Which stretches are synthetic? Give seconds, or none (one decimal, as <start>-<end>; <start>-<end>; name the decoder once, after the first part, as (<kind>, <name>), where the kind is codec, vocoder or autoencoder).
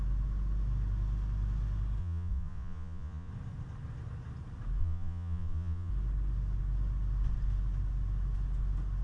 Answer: 2.0-3.3 (vocoder, Vocos); 4.8-5.9